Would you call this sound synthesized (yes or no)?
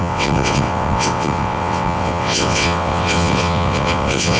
yes